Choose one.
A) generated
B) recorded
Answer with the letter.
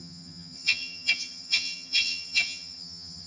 A